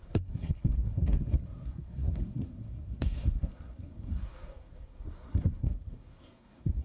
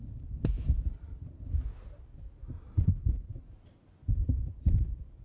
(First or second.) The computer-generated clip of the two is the first